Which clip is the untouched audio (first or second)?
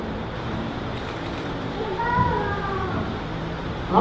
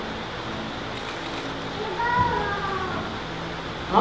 second